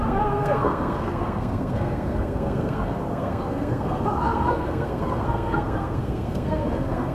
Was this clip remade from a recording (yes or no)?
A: yes